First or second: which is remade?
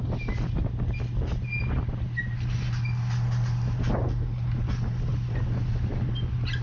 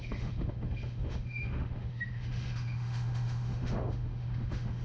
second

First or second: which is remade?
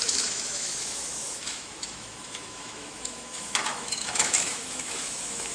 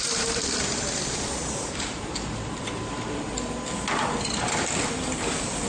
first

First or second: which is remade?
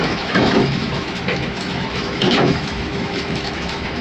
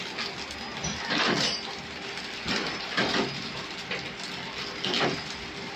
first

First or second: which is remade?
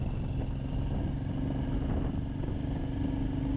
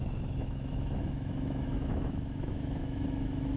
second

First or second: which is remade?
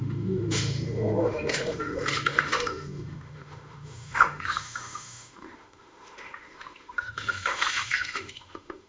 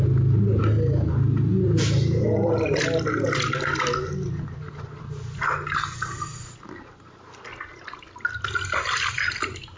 first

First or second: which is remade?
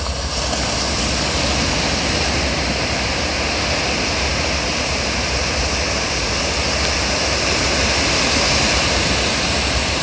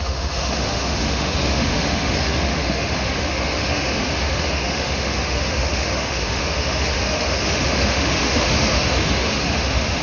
second